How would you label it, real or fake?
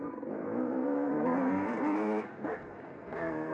fake